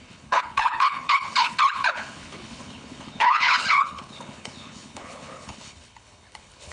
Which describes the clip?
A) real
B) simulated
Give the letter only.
B